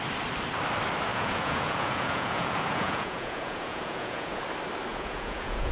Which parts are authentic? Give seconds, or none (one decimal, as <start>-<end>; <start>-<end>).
0.0-1.1; 4.4-4.9